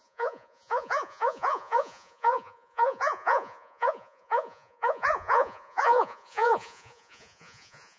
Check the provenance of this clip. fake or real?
fake